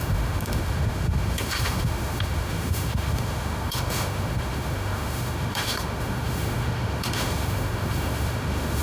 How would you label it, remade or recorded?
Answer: remade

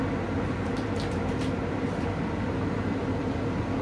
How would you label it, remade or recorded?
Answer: recorded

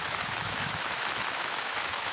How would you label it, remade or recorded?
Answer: remade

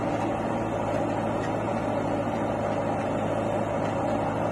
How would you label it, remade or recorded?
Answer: recorded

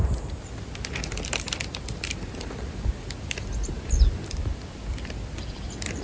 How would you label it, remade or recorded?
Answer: recorded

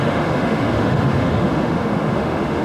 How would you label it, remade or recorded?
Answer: remade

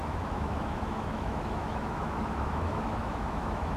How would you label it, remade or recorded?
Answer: remade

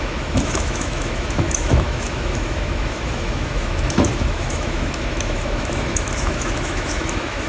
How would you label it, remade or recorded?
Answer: remade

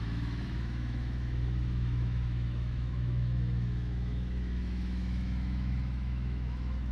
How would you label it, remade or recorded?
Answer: remade